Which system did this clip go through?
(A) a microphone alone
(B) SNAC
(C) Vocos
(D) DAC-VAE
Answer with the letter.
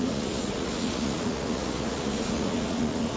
C